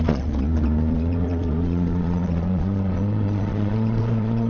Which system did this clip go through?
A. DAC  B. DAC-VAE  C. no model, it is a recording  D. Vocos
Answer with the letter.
D